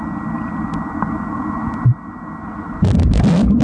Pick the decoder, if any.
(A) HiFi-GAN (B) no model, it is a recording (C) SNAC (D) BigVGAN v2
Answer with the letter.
B